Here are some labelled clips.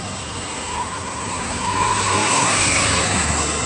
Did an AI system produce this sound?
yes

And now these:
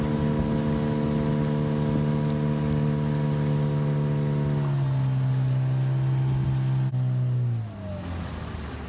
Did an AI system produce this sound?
no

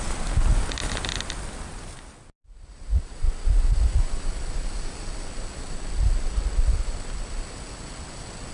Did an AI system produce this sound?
no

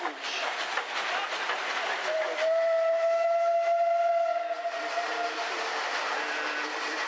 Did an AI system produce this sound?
no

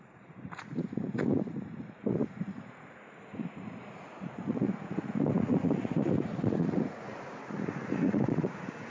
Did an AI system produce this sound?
yes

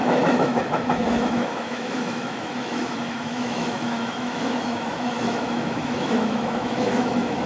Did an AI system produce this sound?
yes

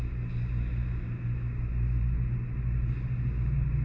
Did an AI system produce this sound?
no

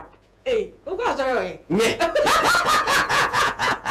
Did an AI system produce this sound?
yes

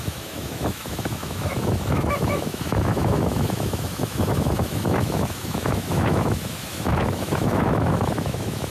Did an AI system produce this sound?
yes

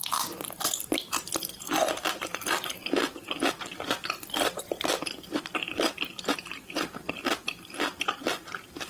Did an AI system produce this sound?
yes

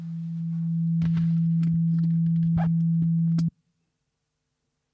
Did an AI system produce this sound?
no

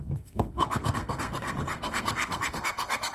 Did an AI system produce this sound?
yes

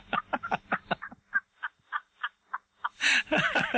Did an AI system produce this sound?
yes